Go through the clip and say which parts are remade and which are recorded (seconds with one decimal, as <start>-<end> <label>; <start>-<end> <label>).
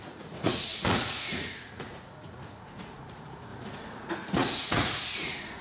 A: 0.0-5.6 remade